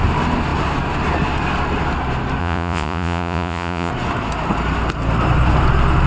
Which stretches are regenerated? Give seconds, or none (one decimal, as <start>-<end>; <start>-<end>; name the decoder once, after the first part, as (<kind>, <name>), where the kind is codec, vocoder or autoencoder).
2.4-3.9 (vocoder, Vocos)